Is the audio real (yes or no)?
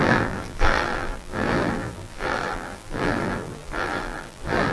no